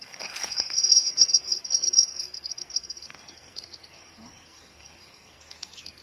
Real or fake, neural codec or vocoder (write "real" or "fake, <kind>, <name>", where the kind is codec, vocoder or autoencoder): fake, codec, SNAC